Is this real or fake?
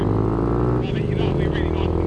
real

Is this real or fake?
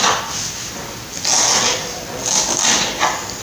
real